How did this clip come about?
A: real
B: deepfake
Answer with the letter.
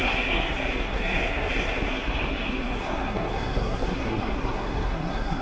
B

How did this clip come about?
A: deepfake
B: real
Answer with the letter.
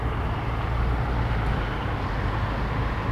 B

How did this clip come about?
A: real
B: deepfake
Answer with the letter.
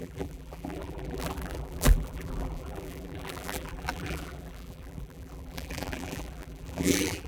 B